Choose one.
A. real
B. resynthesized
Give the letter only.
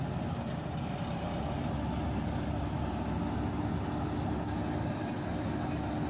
A